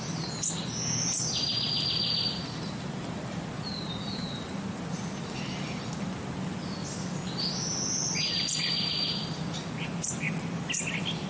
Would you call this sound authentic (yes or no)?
yes